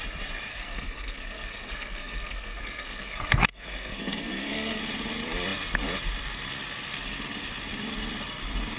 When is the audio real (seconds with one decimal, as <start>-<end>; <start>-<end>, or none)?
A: 0.0-0.5; 4.8-8.8